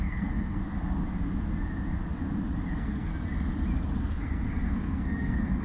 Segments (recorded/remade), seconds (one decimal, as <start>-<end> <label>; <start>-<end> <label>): 0.0-0.6 remade; 0.6-2.7 recorded; 2.7-3.1 remade; 3.1-4.0 recorded; 4.0-5.6 remade